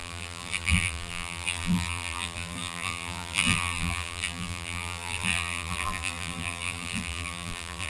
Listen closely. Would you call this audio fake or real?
fake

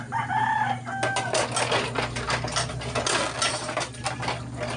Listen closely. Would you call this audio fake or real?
real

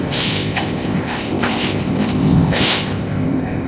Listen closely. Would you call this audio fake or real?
fake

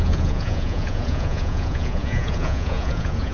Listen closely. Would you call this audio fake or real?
fake